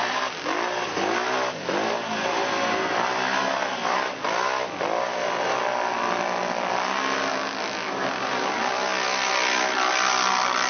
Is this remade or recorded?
recorded